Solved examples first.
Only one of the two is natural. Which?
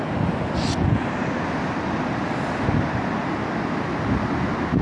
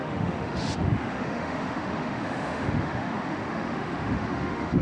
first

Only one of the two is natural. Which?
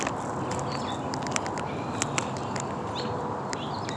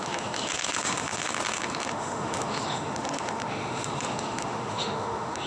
first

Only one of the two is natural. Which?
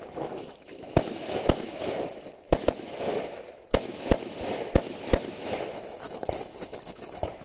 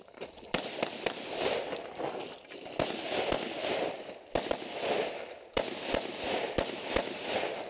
second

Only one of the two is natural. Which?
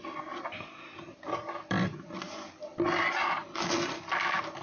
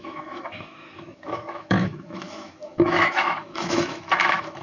first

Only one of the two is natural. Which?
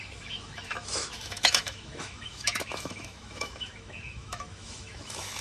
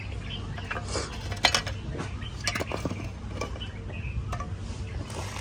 second